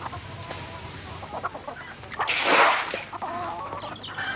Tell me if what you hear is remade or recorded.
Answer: recorded